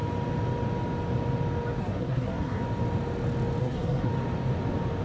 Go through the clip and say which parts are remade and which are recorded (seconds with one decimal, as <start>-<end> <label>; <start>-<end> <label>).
0.0-1.8 recorded; 1.8-2.6 remade; 2.6-3.6 recorded; 3.6-4.1 remade; 4.1-5.0 recorded